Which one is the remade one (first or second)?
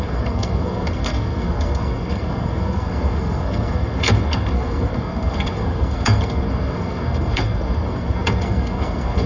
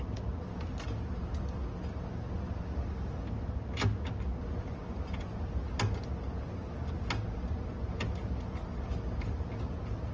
first